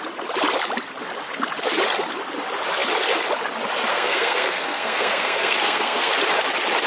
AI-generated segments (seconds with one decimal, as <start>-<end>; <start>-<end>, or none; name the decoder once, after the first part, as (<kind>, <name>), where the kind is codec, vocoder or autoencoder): 3.9-6.1 (codec, SNAC)